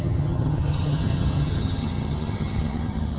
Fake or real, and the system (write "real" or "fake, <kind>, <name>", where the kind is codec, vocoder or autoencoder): fake, vocoder, HiFi-GAN